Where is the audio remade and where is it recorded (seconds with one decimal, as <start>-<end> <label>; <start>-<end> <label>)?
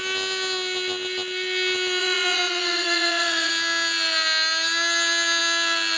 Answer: 0.0-2.0 recorded; 2.0-3.5 remade; 3.5-6.0 recorded